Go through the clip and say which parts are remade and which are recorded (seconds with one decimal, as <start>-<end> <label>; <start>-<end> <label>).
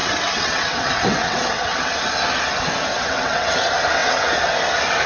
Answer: 0.0-1.9 remade; 1.9-2.9 recorded; 2.9-3.6 remade; 3.6-4.0 recorded; 4.0-4.5 remade; 4.5-5.1 recorded